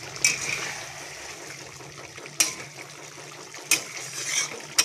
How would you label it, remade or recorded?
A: recorded